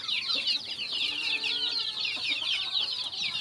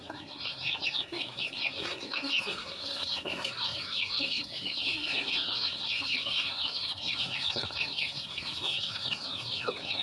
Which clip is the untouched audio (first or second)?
first